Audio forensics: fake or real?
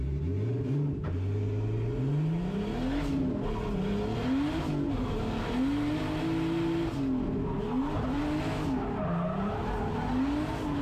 real